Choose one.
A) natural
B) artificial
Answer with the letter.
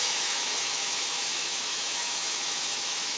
B